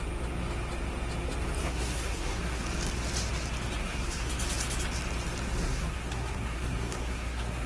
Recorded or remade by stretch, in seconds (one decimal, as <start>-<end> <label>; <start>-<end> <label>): 0.0-1.6 recorded; 1.6-2.6 remade; 2.6-3.8 recorded; 3.8-4.3 remade; 4.3-5.6 recorded; 5.6-7.7 remade